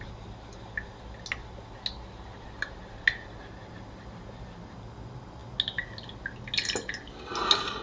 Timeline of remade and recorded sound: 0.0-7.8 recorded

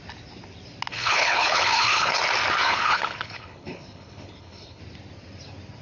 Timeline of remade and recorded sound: 0.0-0.9 recorded; 0.9-2.2 remade; 2.2-2.6 recorded; 2.6-4.8 remade; 4.8-5.8 recorded

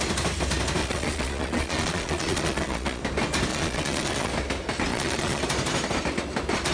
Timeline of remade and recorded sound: 0.0-0.8 recorded; 0.8-3.0 remade; 3.0-3.5 recorded; 3.5-4.3 remade; 4.3-4.9 recorded; 4.9-5.4 remade; 5.4-6.7 recorded